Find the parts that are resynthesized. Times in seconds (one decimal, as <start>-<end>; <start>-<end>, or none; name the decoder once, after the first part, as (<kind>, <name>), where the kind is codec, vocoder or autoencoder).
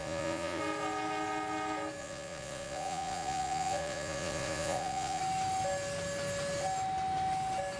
0.0-0.6 (vocoder, Vocos); 2.0-5.2